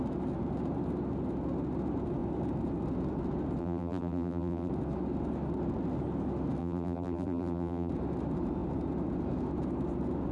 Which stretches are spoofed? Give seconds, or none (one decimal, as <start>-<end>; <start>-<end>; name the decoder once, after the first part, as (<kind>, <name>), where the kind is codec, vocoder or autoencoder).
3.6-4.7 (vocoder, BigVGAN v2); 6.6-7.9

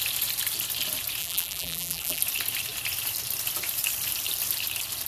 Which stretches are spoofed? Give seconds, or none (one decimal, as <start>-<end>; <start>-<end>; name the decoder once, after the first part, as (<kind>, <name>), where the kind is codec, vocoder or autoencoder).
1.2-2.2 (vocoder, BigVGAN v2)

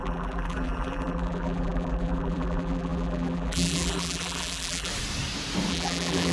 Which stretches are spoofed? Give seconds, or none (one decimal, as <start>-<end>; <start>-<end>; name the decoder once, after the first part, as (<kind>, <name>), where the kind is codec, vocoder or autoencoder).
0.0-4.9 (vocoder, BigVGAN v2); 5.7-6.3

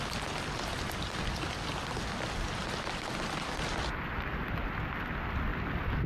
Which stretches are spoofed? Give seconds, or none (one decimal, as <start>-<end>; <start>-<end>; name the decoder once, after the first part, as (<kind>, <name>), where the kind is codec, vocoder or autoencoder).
none